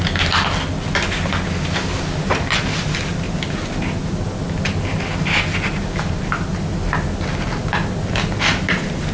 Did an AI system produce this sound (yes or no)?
no